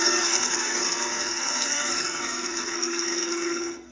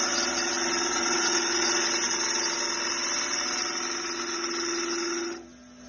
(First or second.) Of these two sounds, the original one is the second